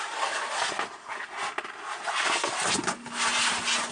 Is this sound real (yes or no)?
yes